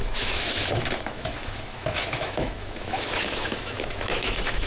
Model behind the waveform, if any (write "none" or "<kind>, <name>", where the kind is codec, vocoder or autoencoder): autoencoder, DAC-VAE